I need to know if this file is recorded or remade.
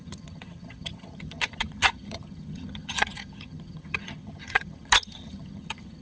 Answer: remade